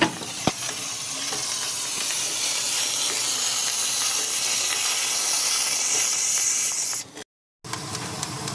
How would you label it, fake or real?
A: real